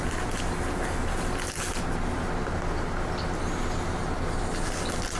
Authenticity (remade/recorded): recorded